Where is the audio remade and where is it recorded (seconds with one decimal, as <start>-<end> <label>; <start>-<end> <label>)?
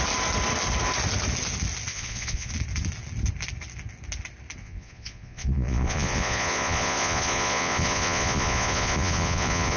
0.0-1.9 recorded; 1.9-2.5 remade; 2.5-4.6 recorded; 4.6-9.8 remade